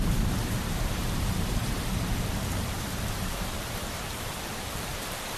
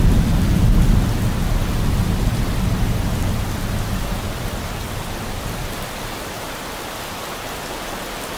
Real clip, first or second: second